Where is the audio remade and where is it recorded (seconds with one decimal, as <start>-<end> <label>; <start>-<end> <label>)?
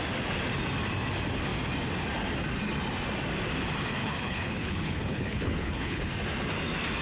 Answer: 0.0-4.0 recorded; 4.0-6.1 remade; 6.1-7.0 recorded